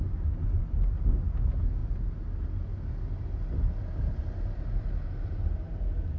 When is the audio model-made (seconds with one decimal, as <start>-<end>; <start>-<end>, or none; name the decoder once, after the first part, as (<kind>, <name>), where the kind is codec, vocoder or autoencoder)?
none